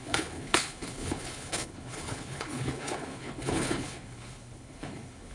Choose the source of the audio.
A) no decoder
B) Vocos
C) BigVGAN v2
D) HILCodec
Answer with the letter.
D